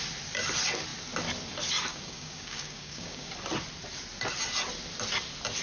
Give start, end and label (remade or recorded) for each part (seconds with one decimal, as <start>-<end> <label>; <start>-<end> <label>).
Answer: 0.0-1.9 recorded; 1.9-3.3 remade; 3.3-5.6 recorded